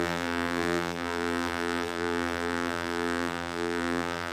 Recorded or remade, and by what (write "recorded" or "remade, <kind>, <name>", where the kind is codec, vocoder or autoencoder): remade, vocoder, BigVGAN v2